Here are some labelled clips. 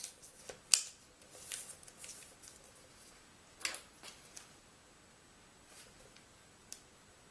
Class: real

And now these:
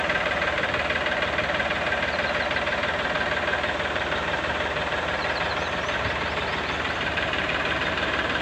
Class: fake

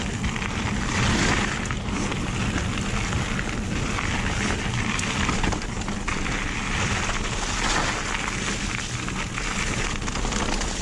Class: real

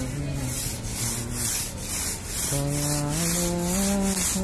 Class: real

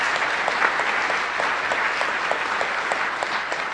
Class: real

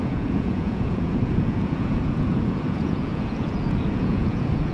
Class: fake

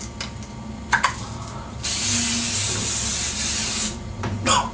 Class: real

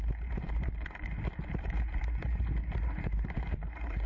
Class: fake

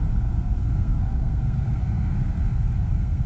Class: fake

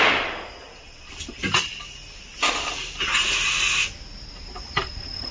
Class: real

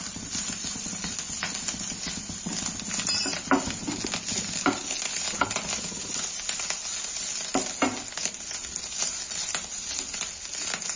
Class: real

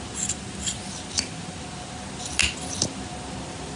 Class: real